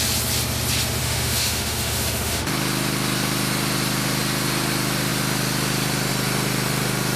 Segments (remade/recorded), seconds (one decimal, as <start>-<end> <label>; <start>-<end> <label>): 0.0-1.0 recorded; 1.0-2.5 remade; 2.5-7.2 recorded